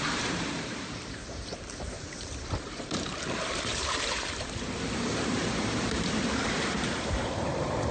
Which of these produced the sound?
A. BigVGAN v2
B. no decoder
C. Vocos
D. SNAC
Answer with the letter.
A